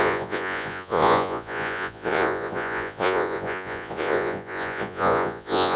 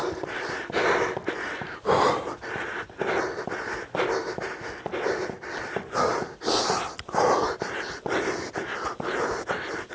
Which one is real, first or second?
second